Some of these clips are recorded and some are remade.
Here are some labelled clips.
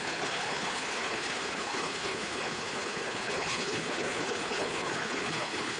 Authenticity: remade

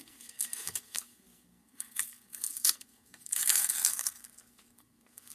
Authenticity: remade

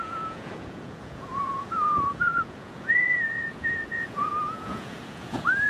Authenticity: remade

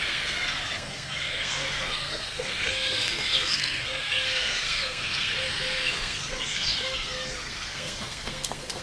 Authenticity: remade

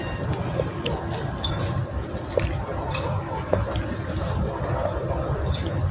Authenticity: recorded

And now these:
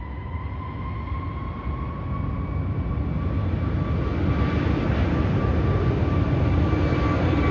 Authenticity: recorded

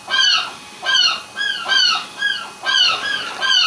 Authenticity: recorded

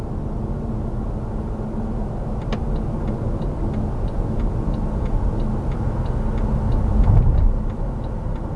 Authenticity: recorded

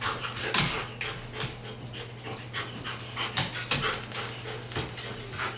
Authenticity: recorded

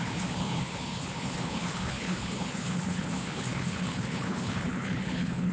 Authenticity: remade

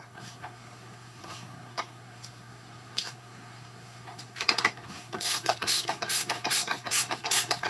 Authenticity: remade